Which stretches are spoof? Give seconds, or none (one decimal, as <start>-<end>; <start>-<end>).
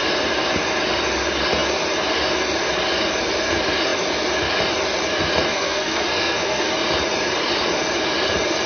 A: 5.5-6.7